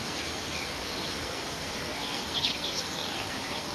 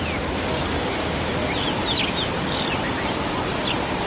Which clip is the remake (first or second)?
first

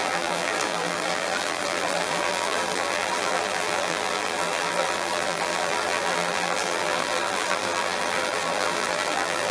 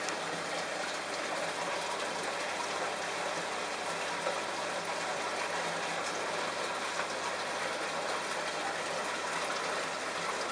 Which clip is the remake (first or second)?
first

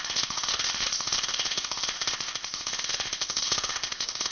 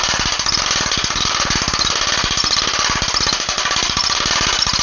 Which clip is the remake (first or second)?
first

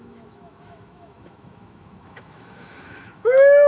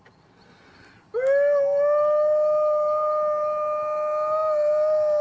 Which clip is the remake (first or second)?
first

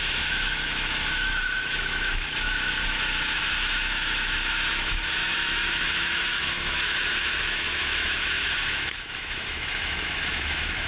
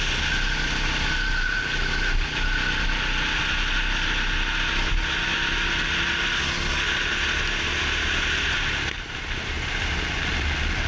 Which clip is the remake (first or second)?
first